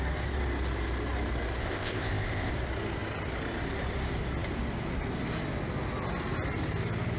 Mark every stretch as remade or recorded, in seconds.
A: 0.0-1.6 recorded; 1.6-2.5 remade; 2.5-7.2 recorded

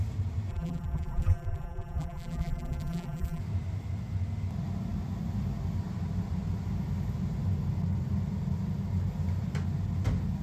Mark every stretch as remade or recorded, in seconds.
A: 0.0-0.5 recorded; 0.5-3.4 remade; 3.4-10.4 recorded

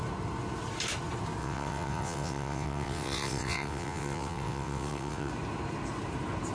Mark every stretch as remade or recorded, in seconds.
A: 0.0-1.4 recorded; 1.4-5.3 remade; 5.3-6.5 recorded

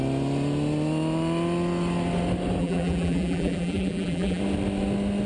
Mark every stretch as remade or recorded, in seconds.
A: 0.0-2.6 recorded; 2.6-4.4 remade; 4.4-5.3 recorded